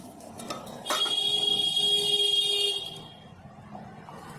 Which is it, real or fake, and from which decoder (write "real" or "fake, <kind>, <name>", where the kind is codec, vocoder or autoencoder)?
real